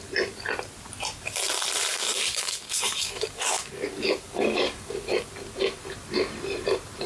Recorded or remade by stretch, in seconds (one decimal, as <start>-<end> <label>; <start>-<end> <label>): 0.0-1.9 recorded; 1.9-5.3 remade; 5.3-7.1 recorded